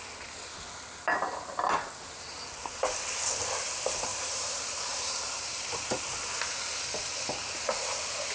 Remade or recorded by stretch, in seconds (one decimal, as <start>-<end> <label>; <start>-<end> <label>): 0.0-4.1 recorded; 4.1-6.6 remade; 6.6-8.3 recorded